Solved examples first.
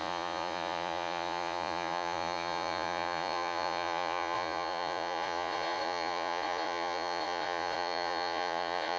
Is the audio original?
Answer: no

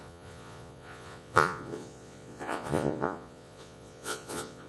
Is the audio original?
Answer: no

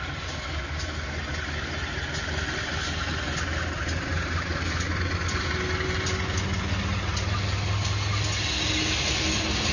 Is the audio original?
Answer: yes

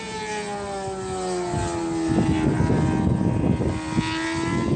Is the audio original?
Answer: yes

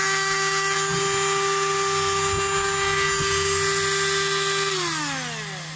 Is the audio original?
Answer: yes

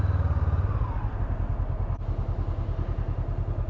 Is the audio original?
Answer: yes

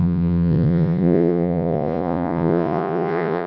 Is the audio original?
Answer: no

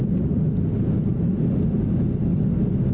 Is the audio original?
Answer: yes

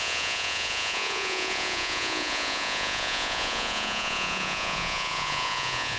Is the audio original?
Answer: no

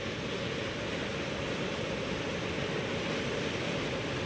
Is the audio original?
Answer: yes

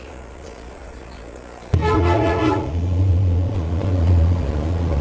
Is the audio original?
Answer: no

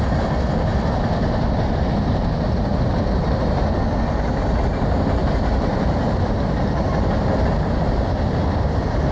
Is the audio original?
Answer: yes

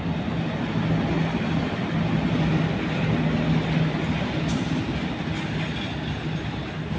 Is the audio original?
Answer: yes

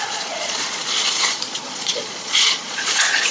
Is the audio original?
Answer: no